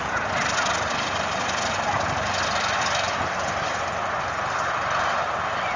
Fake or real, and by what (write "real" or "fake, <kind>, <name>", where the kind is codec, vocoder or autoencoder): real